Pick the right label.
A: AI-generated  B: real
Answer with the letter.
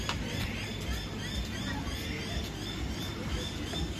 B